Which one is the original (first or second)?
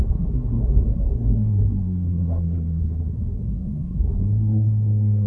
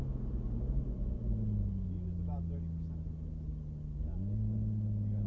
second